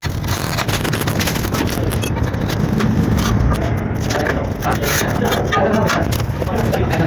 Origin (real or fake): real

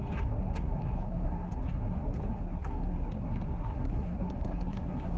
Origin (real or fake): fake